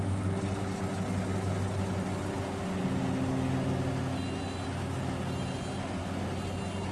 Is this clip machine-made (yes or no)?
no